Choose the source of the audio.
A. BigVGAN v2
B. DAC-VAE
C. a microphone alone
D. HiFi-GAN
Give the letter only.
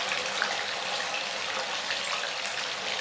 C